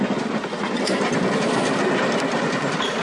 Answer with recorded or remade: recorded